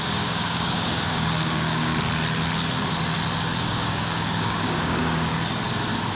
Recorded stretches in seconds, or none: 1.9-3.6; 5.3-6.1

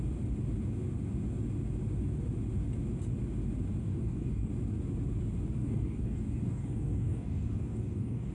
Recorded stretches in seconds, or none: 0.0-3.8; 4.5-5.6